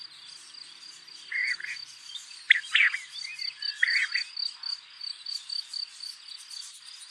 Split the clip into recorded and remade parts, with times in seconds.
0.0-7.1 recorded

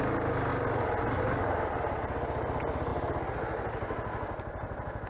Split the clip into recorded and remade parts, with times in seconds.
0.0-5.1 recorded

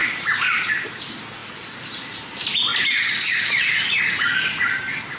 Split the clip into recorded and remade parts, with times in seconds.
0.0-0.7 remade; 0.7-5.2 recorded

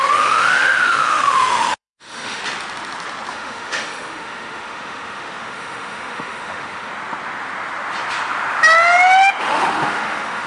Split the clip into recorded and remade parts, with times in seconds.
0.0-2.4 remade; 2.4-3.3 recorded; 3.3-6.9 remade; 6.9-9.4 recorded; 9.4-10.5 remade

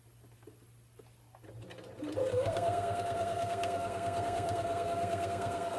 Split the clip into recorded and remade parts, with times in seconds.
0.0-2.2 recorded; 2.2-5.8 remade